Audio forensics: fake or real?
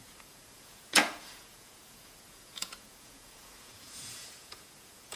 fake